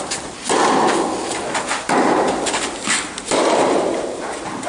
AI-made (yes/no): no